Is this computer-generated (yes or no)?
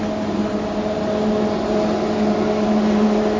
no